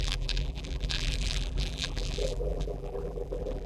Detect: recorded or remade remade